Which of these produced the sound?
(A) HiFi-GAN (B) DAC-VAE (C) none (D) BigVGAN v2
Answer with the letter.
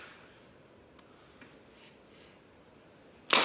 C